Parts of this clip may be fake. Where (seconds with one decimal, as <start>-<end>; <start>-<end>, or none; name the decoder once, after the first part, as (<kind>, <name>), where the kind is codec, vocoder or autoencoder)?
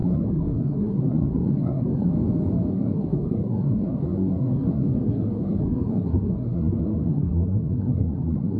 0.0-2.1 (codec, SNAC); 2.7-8.6